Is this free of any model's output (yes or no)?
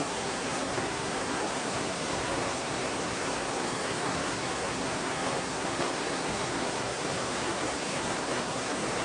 no